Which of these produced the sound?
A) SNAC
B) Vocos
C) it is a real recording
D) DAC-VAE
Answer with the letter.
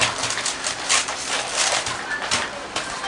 C